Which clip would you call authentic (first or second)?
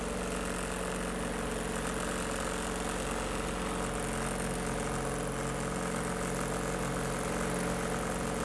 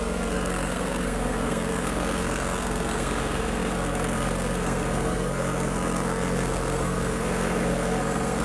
first